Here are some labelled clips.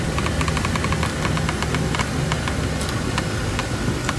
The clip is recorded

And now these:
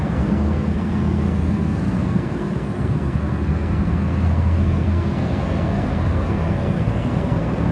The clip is remade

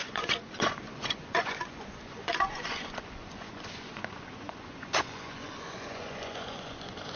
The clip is remade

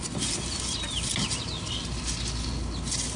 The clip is recorded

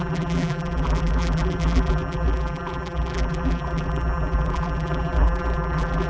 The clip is remade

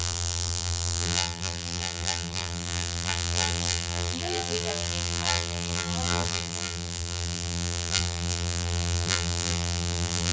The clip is remade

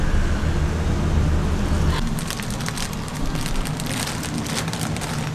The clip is recorded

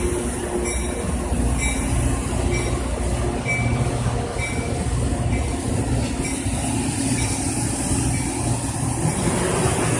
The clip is recorded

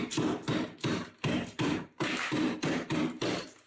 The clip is remade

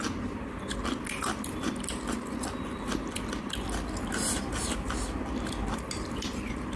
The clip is recorded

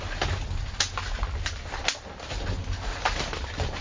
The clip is recorded